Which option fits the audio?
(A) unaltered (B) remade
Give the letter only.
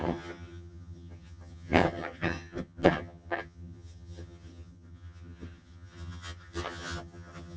B